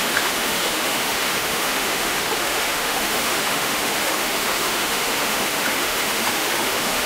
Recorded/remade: remade